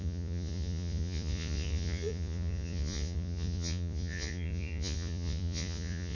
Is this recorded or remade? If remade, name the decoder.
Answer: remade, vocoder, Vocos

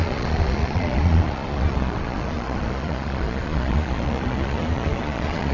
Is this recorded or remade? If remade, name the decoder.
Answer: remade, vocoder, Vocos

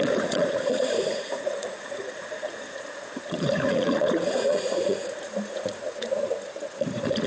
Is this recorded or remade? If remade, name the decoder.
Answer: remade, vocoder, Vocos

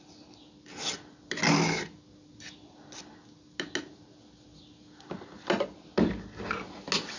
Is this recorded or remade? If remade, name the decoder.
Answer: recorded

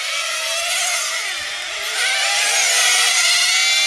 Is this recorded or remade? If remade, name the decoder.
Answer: recorded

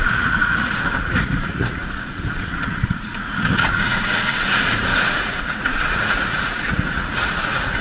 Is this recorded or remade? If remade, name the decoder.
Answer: remade, vocoder, Vocos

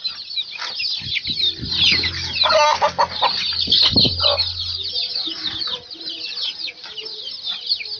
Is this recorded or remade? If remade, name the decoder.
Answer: recorded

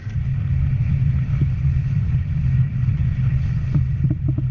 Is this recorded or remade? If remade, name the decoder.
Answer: recorded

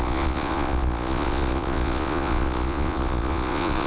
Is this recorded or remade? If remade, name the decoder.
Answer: remade, vocoder, Vocos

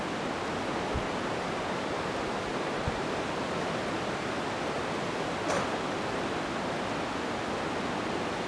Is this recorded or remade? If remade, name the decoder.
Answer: recorded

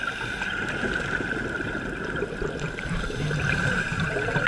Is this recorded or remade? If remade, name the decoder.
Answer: recorded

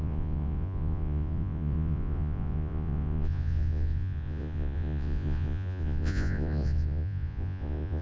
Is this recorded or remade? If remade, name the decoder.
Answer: remade, vocoder, Vocos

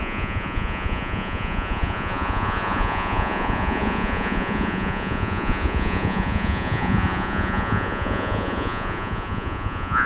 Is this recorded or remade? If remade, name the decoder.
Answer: remade, vocoder, Vocos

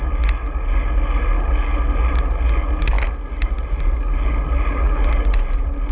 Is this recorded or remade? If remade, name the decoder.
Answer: recorded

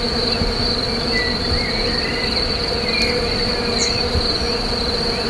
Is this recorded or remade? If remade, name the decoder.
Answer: recorded